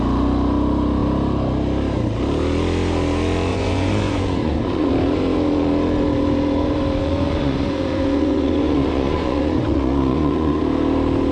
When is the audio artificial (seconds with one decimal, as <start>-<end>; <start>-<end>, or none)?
3.5-4.9; 7.0-10.6